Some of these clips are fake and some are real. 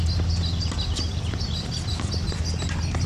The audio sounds real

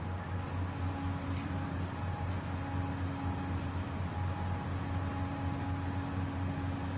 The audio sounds real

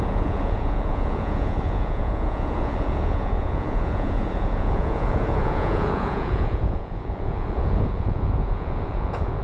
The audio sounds fake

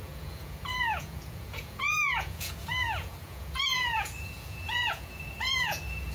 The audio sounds fake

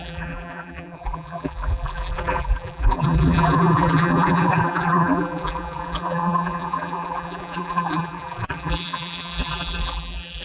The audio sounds fake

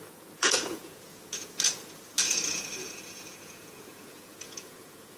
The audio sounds fake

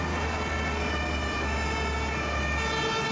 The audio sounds real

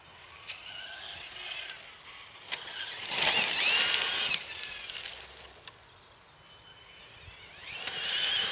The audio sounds real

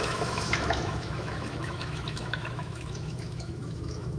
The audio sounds fake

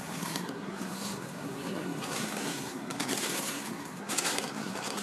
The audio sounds fake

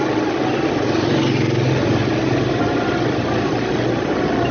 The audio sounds real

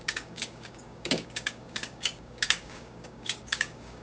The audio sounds fake